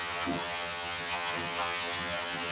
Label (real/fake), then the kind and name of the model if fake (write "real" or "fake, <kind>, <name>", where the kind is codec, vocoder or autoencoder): fake, vocoder, HiFi-GAN